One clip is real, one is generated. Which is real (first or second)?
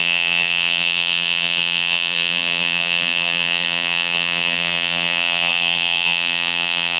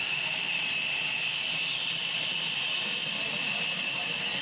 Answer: second